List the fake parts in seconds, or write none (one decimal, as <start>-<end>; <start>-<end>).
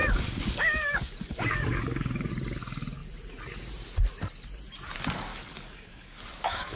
0.0-2.3; 5.3-6.8